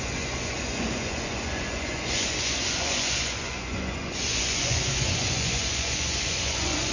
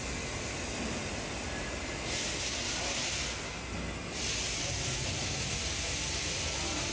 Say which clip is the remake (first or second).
first